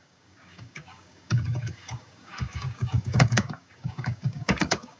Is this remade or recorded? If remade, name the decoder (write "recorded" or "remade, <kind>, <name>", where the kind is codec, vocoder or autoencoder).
remade, codec, DAC